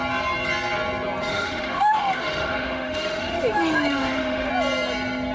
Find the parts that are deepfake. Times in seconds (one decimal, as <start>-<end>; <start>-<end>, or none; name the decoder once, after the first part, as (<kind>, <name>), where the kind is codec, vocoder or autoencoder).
1.3-4.5 (autoencoder, DAC-VAE)

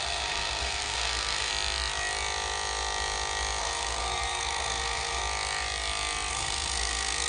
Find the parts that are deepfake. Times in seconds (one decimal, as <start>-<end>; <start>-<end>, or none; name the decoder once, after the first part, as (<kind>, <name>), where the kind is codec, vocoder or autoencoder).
0.0-1.5 (codec, SNAC); 3.6-5.2; 6.3-7.3

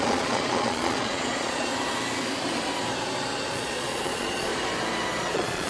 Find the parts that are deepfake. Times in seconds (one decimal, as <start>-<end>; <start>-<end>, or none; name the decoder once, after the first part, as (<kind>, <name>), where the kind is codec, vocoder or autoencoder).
0.0-1.7 (vocoder, Vocos); 3.5-4.5; 5.2-5.7